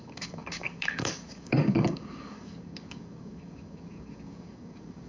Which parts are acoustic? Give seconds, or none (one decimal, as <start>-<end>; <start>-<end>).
none

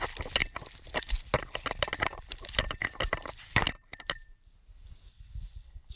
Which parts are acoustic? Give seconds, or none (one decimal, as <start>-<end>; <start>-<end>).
0.0-6.0

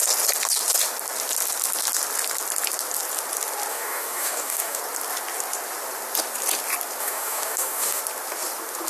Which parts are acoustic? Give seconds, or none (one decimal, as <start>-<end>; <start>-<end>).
0.0-3.7; 4.8-7.0; 8.0-8.9

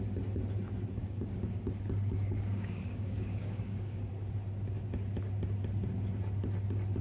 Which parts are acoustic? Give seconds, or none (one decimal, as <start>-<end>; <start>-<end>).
0.0-1.0; 4.1-7.0

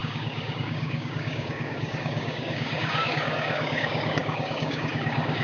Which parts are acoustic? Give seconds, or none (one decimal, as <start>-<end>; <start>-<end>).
none